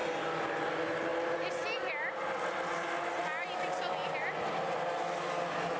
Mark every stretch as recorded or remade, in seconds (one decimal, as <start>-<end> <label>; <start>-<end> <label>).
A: 0.0-5.8 recorded